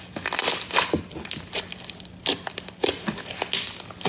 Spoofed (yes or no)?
no